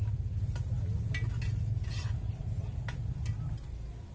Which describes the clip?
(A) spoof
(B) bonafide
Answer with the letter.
B